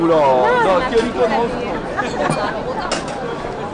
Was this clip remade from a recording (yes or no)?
no